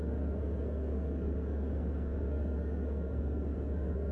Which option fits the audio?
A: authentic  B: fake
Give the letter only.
B